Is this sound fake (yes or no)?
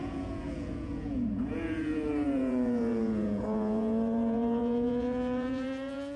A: yes